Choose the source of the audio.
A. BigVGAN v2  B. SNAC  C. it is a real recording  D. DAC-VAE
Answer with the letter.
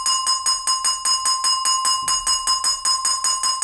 C